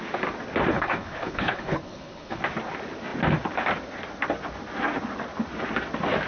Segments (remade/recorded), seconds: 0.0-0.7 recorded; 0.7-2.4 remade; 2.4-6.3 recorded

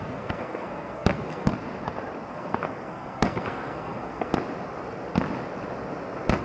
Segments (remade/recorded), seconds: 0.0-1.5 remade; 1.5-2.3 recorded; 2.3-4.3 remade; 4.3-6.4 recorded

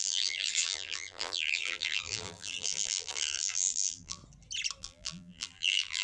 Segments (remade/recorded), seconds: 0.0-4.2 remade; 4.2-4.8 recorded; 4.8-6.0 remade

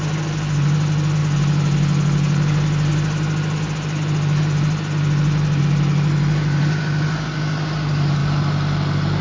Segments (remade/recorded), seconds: 0.0-9.2 recorded

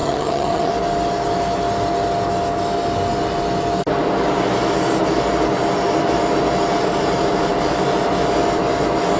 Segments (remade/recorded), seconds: 0.0-0.7 remade; 0.7-9.2 recorded